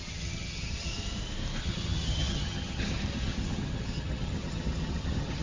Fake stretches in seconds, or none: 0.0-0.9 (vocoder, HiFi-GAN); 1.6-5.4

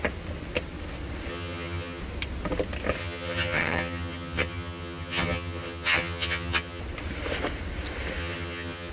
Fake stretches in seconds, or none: 1.3-2.0 (vocoder, HiFi-GAN); 3.0-6.8; 8.2-8.9

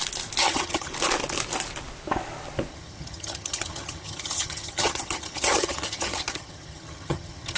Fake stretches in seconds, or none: 0.4-0.9 (vocoder, HiFi-GAN); 2.7-7.6

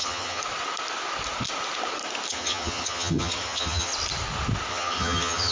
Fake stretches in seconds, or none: 0.0-0.4 (vocoder, HiFi-GAN); 2.3-3.9; 4.7-5.5

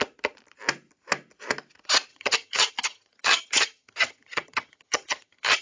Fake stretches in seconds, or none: 2.1-5.6 (vocoder, HiFi-GAN)